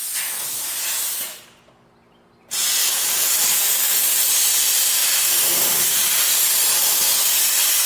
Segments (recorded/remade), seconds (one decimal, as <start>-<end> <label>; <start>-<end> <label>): 0.0-2.8 recorded; 2.8-4.0 remade; 4.0-7.9 recorded